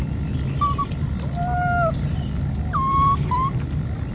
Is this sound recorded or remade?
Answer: recorded